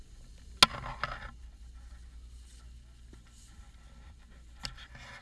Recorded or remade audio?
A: recorded